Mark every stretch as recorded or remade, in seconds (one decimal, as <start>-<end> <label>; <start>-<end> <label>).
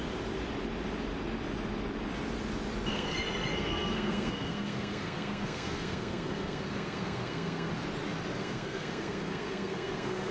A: 0.0-2.9 recorded; 2.9-7.7 remade; 7.7-8.3 recorded; 8.3-10.3 remade